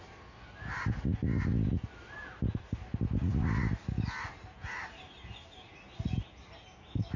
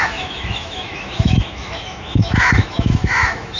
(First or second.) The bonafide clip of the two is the first